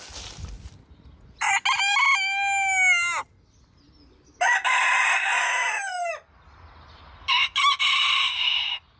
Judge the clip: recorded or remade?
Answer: recorded